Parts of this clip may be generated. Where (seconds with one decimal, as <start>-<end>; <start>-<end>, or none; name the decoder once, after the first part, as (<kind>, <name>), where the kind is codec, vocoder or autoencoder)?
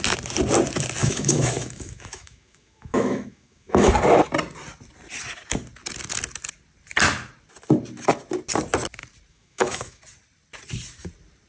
1.0-3.9 (autoencoder, DAC-VAE); 9.3-10.0